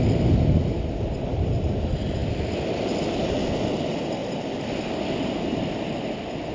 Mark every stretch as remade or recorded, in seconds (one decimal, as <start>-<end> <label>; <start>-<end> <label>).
0.0-6.5 recorded